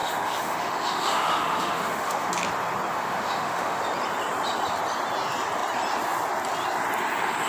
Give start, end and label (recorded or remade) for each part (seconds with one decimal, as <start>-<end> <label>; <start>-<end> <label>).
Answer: 0.0-2.3 remade; 2.3-2.9 recorded; 2.9-3.8 remade; 3.8-7.5 recorded